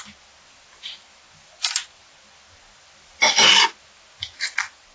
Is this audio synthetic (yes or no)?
no